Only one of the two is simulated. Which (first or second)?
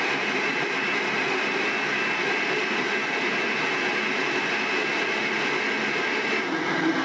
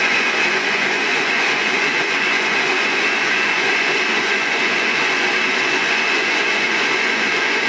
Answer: second